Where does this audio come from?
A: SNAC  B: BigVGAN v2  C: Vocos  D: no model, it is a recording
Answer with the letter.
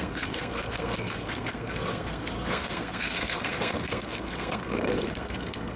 A